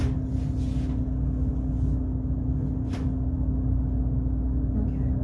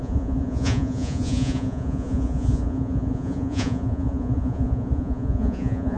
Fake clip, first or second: second